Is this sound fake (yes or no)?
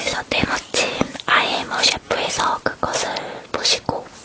yes